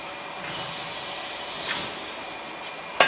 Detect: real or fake fake